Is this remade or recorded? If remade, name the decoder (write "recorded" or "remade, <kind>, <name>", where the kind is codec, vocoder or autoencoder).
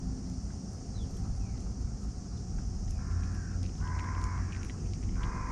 recorded